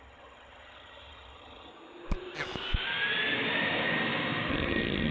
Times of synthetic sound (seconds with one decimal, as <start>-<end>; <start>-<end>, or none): 0.0-1.7; 4.5-5.1